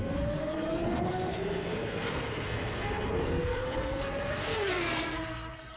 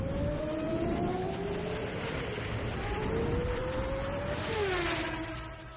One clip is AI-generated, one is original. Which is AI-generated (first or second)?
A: first